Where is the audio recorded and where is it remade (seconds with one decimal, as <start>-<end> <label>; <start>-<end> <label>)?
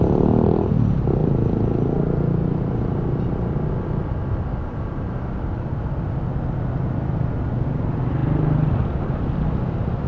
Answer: 0.0-4.2 recorded; 4.2-6.0 remade; 6.0-10.1 recorded